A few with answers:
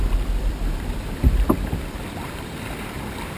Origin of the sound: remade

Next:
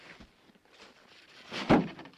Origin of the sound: recorded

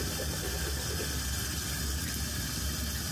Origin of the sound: recorded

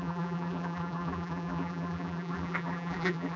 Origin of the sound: remade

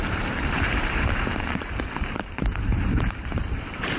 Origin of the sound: remade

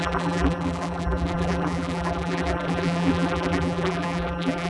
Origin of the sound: remade